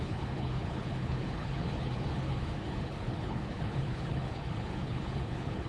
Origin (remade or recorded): remade